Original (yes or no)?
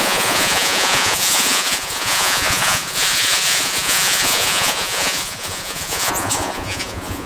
no